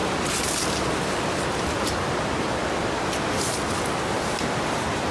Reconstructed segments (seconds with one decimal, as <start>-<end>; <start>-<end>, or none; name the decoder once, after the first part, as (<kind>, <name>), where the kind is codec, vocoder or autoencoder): none